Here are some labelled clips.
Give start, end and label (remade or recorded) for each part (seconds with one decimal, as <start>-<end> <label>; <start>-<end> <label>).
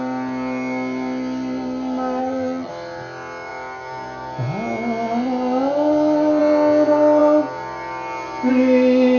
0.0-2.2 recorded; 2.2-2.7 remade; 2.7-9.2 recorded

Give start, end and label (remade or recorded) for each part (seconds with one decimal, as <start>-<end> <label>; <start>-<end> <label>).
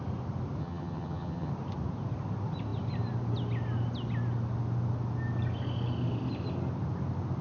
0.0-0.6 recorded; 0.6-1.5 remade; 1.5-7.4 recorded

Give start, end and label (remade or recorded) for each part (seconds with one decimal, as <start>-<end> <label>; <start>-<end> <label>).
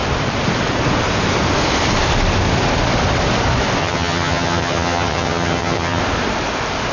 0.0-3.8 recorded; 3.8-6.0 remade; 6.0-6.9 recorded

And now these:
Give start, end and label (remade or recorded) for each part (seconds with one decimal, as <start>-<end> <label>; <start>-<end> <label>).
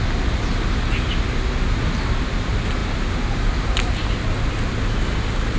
0.0-5.6 recorded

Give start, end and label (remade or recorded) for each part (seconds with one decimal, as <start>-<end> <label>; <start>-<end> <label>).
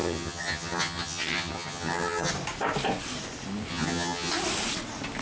0.0-2.3 remade; 2.3-3.7 recorded; 3.7-4.3 remade; 4.3-5.2 recorded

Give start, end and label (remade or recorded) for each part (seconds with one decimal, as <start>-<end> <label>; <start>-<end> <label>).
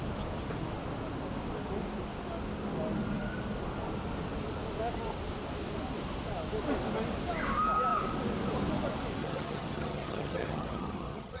0.0-9.2 recorded; 9.2-11.4 remade